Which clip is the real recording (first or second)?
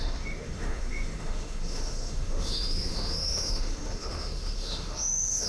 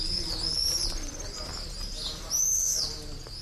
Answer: second